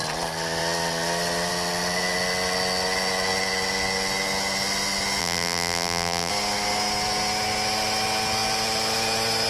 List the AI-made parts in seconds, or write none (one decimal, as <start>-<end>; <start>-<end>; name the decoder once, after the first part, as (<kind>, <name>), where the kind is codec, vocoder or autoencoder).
5.2-6.3 (vocoder, BigVGAN v2)